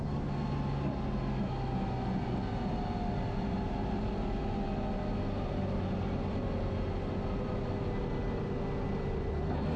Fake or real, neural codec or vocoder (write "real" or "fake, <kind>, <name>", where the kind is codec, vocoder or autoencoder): real